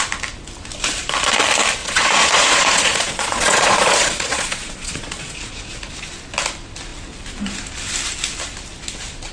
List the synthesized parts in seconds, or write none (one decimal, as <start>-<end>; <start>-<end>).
1.8-5.7